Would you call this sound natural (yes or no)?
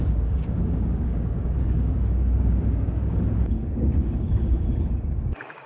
no